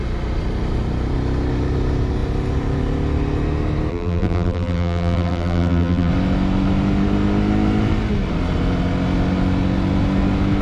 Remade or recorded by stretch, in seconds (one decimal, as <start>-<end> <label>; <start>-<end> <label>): 0.0-3.9 recorded; 3.9-6.1 remade; 6.1-10.6 recorded